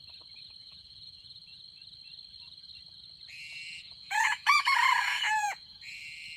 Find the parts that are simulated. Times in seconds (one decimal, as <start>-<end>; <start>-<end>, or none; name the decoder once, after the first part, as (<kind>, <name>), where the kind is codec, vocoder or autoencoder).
0.6-1.6 (vocoder, Vocos); 3.8-6.0